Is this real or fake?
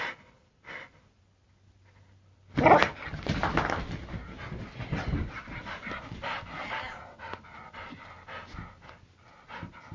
real